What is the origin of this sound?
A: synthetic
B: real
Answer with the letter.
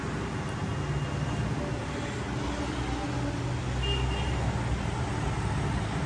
B